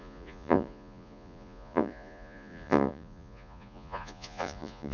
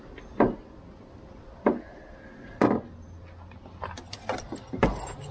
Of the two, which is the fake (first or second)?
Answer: first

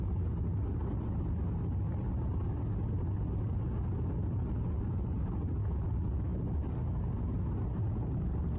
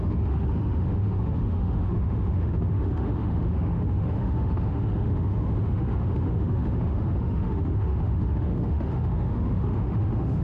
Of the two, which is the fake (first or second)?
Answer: second